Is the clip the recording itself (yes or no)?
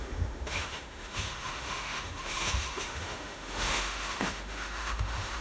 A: no